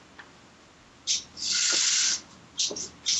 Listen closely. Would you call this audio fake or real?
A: real